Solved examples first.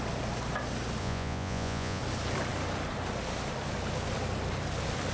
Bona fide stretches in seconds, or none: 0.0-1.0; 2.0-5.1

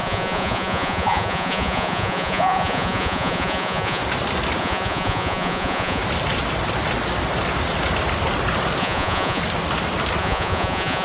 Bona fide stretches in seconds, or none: 4.0-4.6; 6.0-8.8; 9.4-10.2